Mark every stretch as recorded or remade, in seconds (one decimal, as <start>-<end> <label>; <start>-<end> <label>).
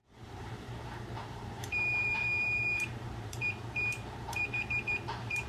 0.0-5.5 remade